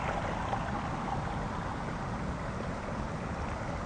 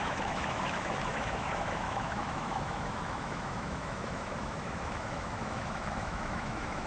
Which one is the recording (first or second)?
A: first